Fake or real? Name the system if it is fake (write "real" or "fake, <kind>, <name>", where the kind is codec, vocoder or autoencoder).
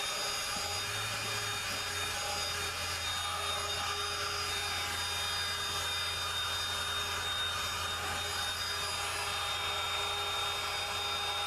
real